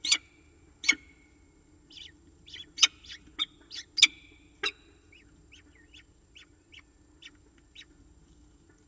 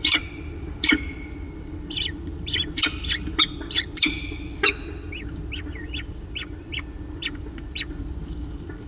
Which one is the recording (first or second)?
first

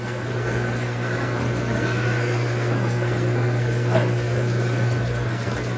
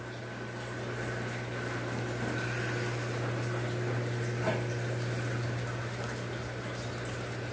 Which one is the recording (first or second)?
second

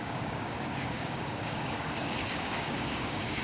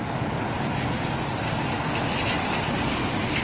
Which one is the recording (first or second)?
second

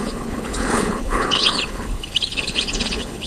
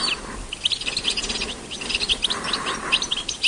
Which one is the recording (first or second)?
second